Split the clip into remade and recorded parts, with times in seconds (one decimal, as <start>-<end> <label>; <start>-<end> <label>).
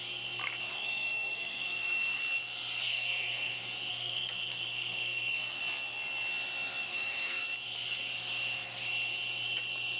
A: 0.0-0.7 recorded; 0.7-2.2 remade; 2.2-2.8 recorded; 2.8-3.5 remade; 3.5-3.9 recorded; 3.9-5.6 remade; 5.6-6.9 recorded; 6.9-7.4 remade; 7.4-10.0 recorded